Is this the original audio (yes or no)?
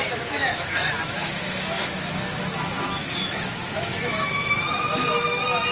no